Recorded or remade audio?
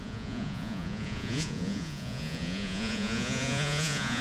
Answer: remade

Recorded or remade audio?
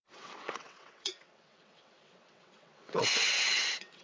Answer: remade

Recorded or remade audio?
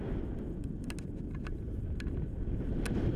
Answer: recorded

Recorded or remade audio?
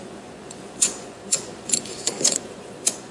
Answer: remade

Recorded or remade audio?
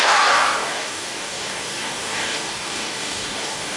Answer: remade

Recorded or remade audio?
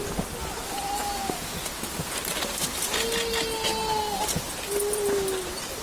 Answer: recorded